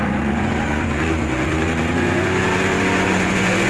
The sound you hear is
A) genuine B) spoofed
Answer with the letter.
B